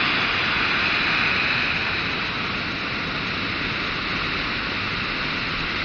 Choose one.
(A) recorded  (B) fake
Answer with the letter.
A